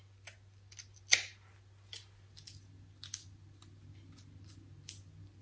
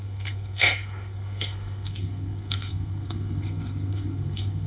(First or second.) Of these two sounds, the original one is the first